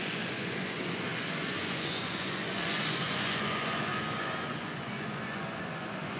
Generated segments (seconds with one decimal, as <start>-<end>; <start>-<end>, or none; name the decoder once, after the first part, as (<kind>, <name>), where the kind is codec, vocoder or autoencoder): 0.0-6.2 (vocoder, Vocos)